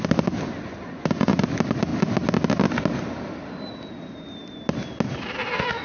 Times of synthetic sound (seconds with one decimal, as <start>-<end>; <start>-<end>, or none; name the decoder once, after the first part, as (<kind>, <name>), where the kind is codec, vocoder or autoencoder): 0.7-1.4 (vocoder, Vocos)